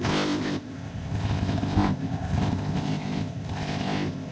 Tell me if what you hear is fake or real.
fake